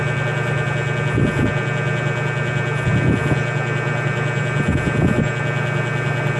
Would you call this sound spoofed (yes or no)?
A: no